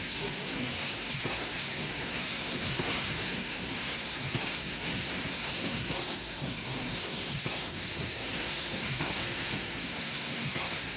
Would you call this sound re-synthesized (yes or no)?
yes